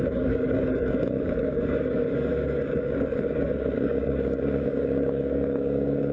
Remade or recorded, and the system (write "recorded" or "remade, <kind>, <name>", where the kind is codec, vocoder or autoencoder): remade, codec, DAC